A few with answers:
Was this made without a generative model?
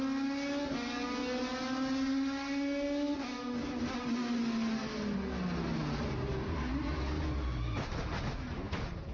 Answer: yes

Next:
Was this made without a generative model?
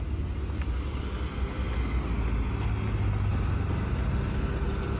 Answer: yes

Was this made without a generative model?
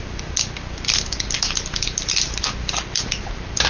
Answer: yes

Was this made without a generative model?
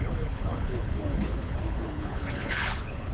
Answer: no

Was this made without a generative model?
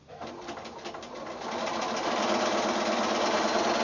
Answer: yes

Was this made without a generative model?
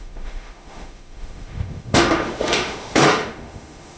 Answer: no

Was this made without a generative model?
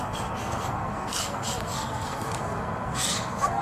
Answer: no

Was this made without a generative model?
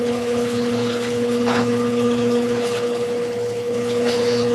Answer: no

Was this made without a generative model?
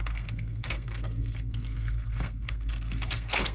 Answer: no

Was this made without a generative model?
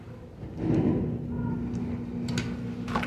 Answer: yes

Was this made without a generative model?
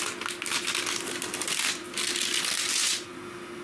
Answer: yes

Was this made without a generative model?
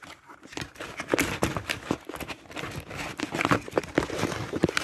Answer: yes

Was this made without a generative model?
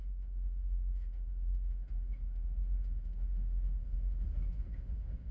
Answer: no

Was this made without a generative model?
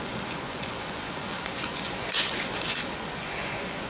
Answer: no